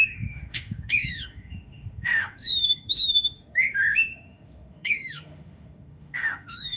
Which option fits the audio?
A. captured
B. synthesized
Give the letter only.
B